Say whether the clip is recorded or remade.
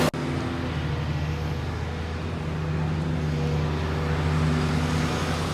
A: recorded